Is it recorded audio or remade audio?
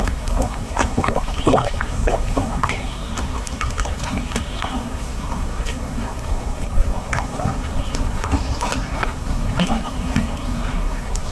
remade